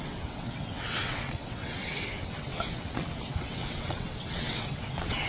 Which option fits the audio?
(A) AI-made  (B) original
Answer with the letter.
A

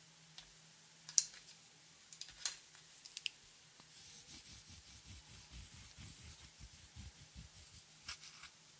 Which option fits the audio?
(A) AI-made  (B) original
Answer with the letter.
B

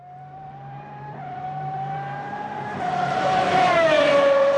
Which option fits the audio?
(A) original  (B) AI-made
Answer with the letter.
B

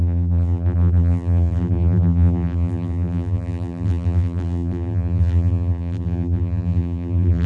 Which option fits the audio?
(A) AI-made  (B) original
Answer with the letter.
A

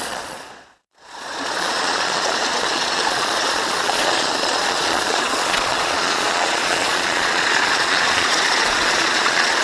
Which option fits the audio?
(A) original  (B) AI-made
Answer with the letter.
B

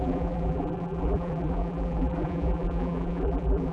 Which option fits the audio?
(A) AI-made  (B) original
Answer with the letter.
A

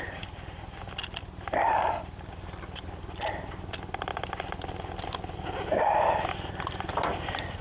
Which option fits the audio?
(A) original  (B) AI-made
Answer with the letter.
A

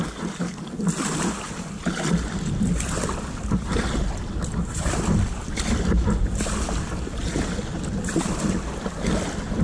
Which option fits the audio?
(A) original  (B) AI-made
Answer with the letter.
A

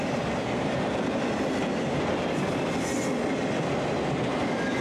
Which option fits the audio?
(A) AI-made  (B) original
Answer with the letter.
B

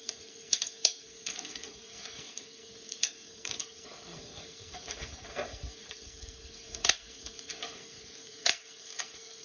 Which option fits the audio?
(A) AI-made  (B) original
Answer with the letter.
A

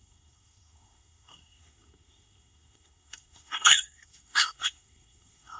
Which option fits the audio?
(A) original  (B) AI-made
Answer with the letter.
B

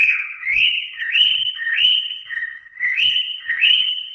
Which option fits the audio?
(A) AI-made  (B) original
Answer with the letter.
A